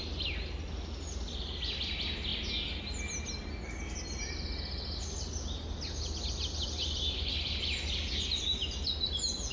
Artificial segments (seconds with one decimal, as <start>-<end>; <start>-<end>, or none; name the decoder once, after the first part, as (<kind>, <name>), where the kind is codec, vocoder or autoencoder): none

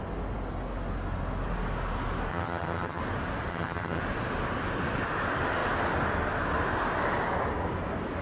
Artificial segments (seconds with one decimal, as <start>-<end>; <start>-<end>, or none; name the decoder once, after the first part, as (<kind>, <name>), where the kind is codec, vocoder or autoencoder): 2.3-3.0 (vocoder, HiFi-GAN); 3.5-4.0